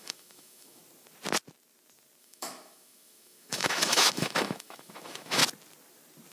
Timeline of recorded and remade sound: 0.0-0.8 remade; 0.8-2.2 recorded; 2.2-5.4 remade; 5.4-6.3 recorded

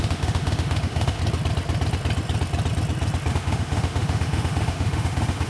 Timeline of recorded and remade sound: 0.0-1.2 remade; 1.2-3.3 recorded; 3.3-5.5 remade

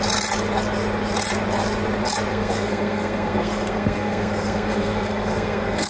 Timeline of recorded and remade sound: 0.0-2.3 recorded; 2.3-5.9 remade

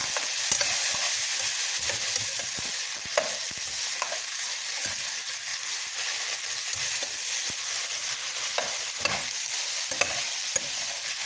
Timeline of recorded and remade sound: 0.0-11.3 recorded

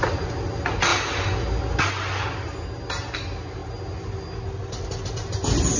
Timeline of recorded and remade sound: 0.0-5.8 recorded